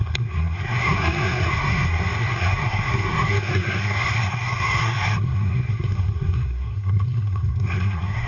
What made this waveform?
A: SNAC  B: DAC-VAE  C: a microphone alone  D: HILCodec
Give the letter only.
A